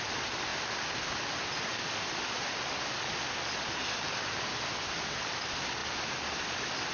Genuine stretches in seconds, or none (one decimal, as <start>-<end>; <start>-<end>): 0.0-6.9